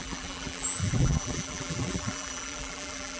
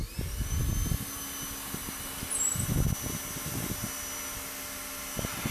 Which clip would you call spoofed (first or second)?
first